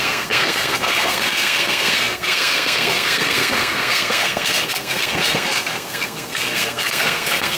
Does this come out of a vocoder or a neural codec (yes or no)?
yes